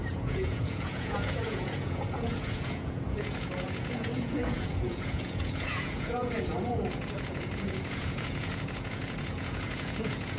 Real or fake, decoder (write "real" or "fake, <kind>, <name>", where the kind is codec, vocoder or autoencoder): fake, vocoder, Vocos